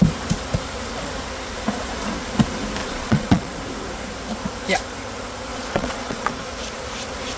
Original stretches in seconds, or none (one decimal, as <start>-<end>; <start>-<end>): 0.0-2.8; 3.6-5.5; 6.3-7.4